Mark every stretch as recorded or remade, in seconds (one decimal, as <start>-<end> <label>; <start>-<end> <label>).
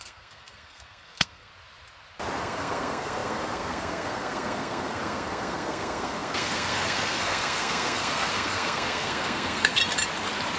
0.0-1.5 remade; 1.5-2.4 recorded; 2.4-9.8 remade; 9.8-10.6 recorded